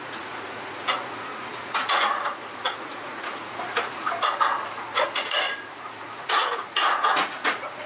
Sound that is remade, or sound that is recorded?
remade